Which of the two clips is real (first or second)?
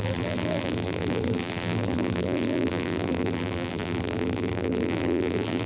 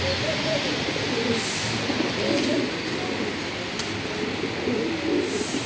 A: second